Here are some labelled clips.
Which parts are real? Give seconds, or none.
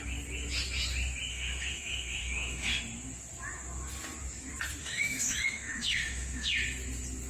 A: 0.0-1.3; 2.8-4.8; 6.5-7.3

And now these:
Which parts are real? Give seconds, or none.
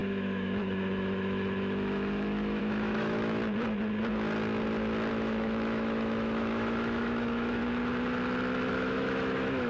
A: 3.4-5.1; 7.6-8.7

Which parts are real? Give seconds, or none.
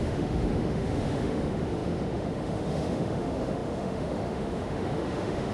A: none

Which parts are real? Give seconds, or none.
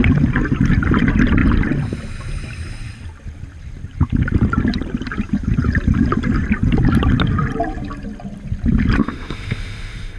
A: 0.0-9.0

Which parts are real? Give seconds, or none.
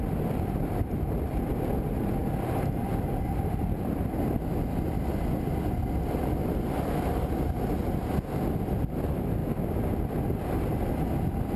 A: 0.0-11.6